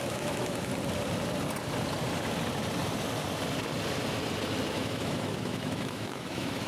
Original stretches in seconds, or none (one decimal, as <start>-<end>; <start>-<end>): 0.7-4.7